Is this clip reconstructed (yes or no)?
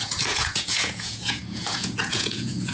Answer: yes